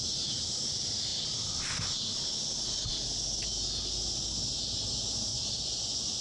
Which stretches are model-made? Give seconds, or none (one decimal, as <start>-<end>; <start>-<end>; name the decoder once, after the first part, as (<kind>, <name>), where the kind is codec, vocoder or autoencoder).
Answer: 5.3-6.2 (vocoder, Vocos)